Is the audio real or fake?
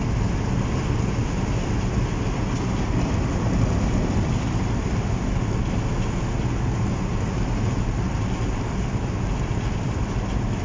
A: real